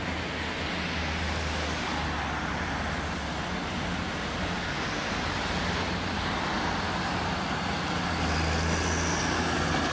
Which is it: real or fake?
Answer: real